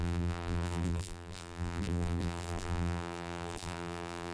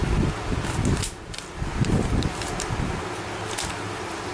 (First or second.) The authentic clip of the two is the second